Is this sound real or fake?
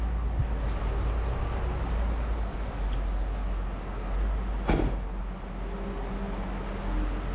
real